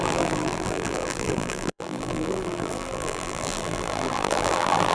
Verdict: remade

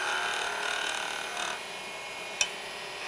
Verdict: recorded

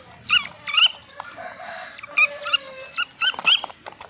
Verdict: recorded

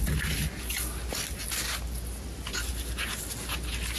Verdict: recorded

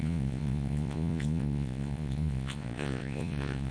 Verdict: remade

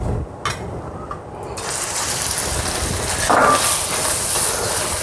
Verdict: recorded